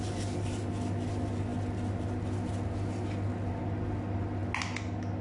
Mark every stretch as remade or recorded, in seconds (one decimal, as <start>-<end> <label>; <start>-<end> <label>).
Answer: 0.0-5.2 recorded